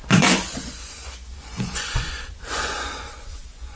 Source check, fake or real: fake